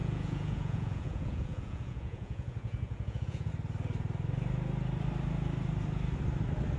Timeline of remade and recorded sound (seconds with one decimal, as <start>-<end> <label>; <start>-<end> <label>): 0.0-3.5 remade; 3.5-6.8 recorded